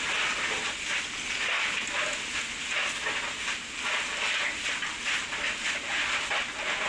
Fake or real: real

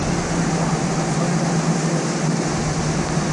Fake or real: real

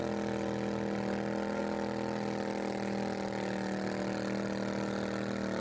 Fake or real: real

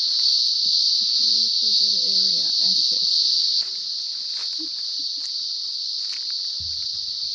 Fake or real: real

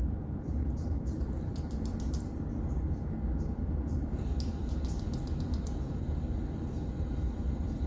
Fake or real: real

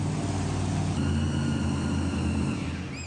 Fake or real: real